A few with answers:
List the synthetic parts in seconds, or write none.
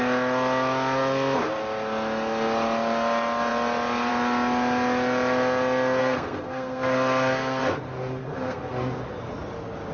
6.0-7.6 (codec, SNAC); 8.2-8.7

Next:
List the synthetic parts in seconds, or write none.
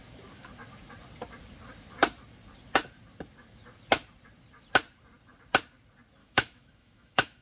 6.2-7.4 (autoencoder, DAC-VAE)